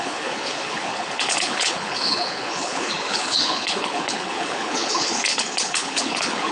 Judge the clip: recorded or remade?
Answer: remade